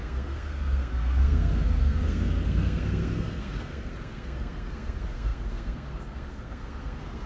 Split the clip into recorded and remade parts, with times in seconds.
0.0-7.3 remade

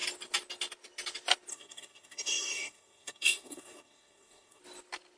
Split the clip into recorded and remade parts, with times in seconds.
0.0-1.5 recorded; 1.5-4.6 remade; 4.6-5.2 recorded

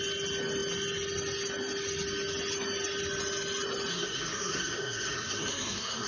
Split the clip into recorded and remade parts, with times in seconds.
0.0-3.9 recorded; 3.9-6.1 remade